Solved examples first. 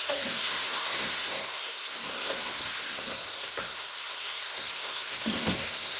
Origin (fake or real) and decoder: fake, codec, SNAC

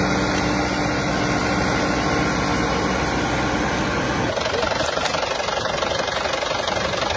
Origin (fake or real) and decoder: real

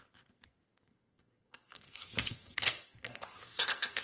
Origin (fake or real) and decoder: fake, codec, SNAC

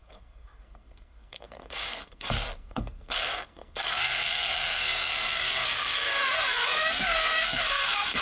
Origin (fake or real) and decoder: fake, codec, SNAC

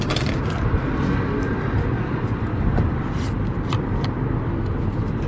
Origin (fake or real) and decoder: real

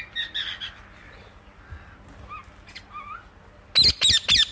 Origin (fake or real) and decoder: real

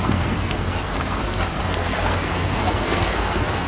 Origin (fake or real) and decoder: fake, codec, SNAC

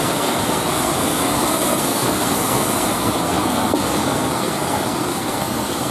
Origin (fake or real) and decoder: fake, codec, SNAC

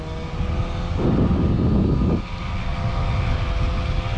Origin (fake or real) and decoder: real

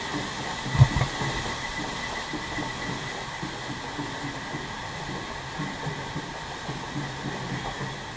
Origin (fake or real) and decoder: real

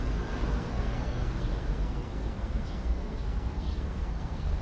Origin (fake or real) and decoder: fake, codec, SNAC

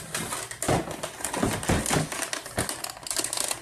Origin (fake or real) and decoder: real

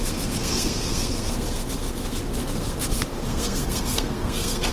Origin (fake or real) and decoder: fake, codec, SNAC